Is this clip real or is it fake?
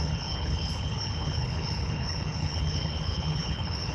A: fake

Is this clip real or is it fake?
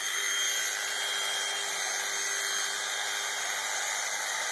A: real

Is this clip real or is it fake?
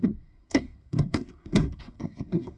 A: fake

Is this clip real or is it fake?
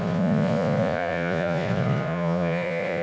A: fake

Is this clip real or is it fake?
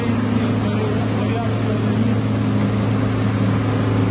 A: real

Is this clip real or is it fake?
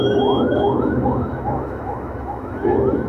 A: fake